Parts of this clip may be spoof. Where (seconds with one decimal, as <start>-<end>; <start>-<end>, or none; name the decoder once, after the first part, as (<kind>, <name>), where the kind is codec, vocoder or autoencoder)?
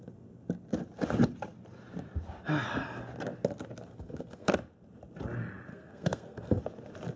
3.9-4.5 (codec, SNAC); 5.7-6.6